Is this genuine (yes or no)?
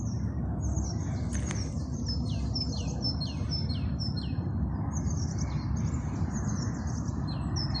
yes